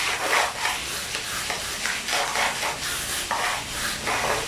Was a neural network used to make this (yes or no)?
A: no